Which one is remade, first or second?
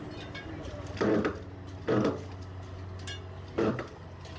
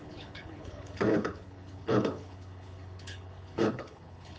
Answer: second